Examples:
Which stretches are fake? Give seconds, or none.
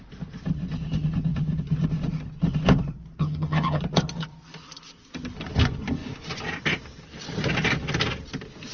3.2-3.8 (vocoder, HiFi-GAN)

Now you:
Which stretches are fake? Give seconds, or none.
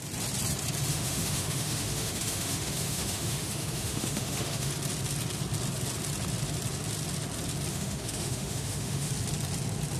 0.9-4.7 (autoencoder, DAC-VAE); 7.7-9.1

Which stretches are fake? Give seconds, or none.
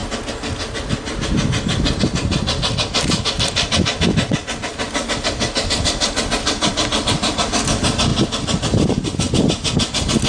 none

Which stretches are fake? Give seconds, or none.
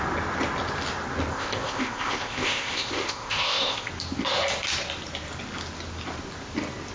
1.3-3.9 (codec, ZipCodec)